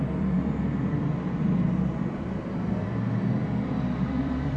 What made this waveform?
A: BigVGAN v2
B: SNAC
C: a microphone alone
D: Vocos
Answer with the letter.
A